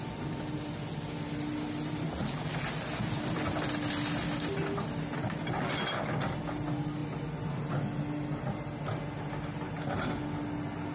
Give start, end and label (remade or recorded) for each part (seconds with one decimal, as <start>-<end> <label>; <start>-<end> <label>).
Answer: 0.0-10.9 recorded

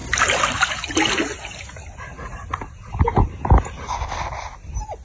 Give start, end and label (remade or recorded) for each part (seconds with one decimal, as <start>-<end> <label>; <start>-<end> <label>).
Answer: 0.0-5.0 recorded